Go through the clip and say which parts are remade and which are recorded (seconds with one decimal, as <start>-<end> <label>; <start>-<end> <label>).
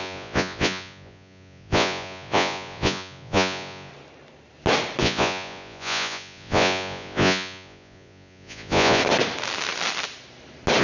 0.0-3.9 remade; 3.9-5.0 recorded; 5.0-9.0 remade; 9.0-10.8 recorded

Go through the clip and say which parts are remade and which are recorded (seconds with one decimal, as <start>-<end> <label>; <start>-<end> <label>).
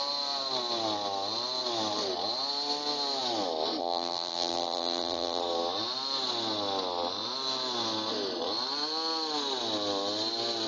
0.0-3.8 recorded; 3.8-5.4 remade; 5.4-10.7 recorded